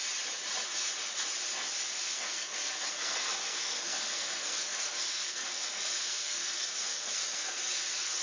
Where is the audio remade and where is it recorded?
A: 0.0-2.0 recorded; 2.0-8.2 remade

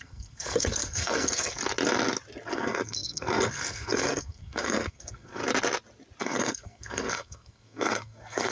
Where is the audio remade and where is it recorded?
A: 0.0-1.6 remade; 1.6-2.5 recorded; 2.5-5.4 remade; 5.4-6.2 recorded; 6.2-8.5 remade

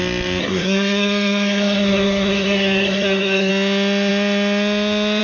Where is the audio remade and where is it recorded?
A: 0.0-0.4 recorded; 0.4-3.5 remade; 3.5-5.2 recorded

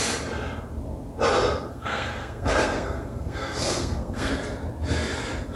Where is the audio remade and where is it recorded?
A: 0.0-1.7 recorded; 1.7-4.3 remade; 4.3-5.6 recorded

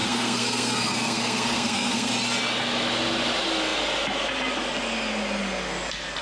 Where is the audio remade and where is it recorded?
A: 0.0-2.1 remade; 2.1-6.2 recorded

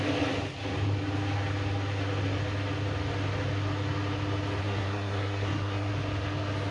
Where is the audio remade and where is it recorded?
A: 0.0-4.6 recorded; 4.6-5.9 remade; 5.9-6.7 recorded

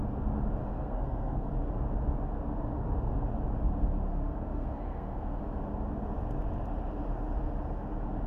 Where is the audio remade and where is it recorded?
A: 0.0-0.6 recorded; 0.6-1.5 remade; 1.5-4.1 recorded; 4.1-5.4 remade; 5.4-8.3 recorded

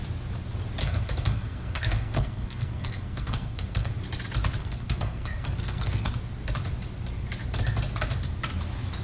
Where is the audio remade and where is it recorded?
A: 0.0-0.8 recorded; 0.8-3.9 remade; 3.9-4.6 recorded; 4.6-6.1 remade; 6.1-9.0 recorded